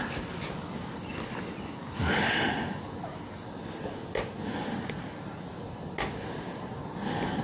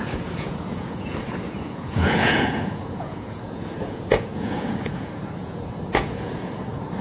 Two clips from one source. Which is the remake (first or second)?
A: second